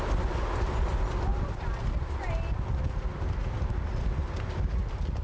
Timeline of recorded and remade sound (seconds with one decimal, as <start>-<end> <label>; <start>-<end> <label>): 0.0-1.3 recorded; 1.3-2.9 remade; 2.9-5.2 recorded